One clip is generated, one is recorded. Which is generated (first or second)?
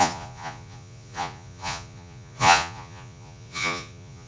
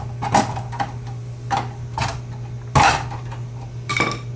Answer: first